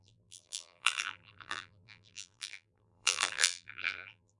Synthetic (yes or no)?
yes